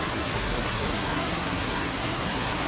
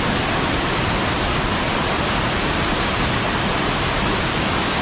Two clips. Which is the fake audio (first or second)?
first